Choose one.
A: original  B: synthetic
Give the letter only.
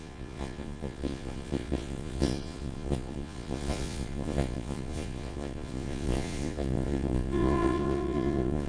B